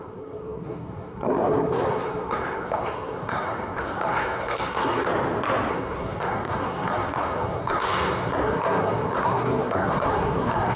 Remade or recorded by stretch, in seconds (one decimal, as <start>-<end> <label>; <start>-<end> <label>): 0.0-5.1 remade; 5.1-5.7 recorded; 5.7-10.8 remade